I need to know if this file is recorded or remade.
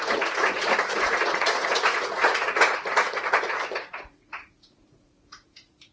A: remade